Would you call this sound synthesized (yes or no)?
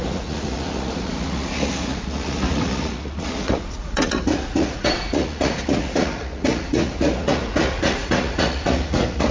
yes